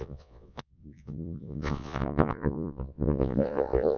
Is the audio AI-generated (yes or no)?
yes